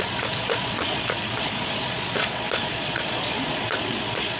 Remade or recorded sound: remade